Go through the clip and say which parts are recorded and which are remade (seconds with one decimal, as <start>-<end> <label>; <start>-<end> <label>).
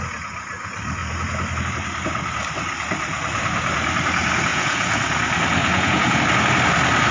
0.0-4.5 recorded; 4.5-5.0 remade; 5.0-5.6 recorded; 5.6-6.2 remade; 6.2-7.1 recorded